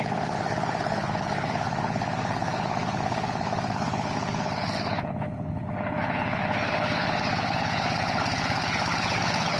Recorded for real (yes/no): no